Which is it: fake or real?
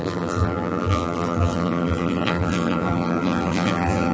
fake